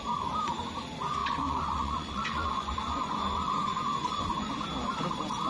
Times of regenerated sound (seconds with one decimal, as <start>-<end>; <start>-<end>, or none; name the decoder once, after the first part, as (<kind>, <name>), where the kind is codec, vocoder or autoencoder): 1.2-4.5 (vocoder, Vocos)